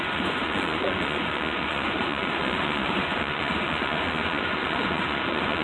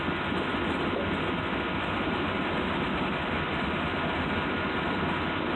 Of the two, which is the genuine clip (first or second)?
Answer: second